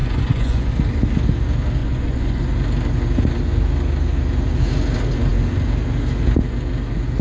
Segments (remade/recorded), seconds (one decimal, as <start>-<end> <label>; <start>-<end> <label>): 0.0-0.7 remade; 0.7-1.8 recorded; 1.8-2.4 remade; 2.4-7.2 recorded